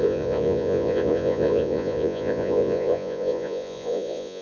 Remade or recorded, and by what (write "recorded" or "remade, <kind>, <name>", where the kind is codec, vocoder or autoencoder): remade, vocoder, Vocos